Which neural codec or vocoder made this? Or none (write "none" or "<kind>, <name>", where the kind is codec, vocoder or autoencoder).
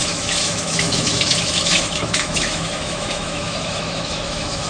autoencoder, DAC-VAE